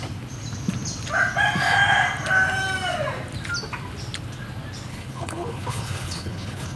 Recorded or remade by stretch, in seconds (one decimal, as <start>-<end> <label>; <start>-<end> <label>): 0.0-4.9 recorded; 4.9-6.8 remade